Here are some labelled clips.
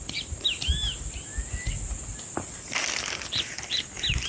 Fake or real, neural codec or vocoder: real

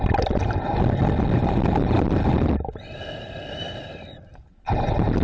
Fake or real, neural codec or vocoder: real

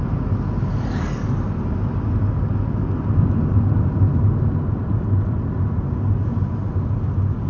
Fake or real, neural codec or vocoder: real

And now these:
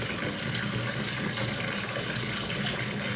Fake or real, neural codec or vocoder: real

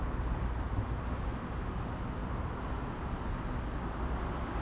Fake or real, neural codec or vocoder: real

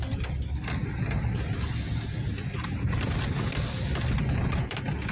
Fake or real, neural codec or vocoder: real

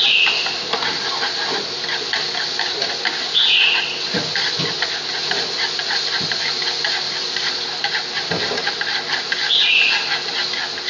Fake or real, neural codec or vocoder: real